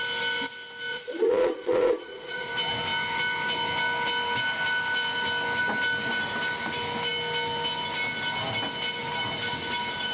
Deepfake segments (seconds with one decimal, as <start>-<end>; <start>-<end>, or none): 0.9-2.5